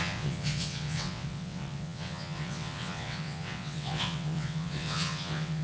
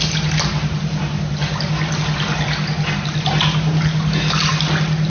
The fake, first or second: first